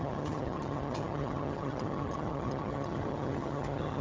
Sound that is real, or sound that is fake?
fake